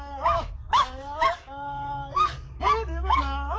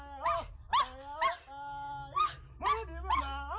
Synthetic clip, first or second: first